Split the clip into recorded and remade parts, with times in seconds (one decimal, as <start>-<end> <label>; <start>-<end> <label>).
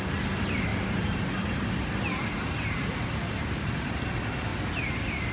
0.0-0.7 recorded; 0.7-3.9 remade; 3.9-5.3 recorded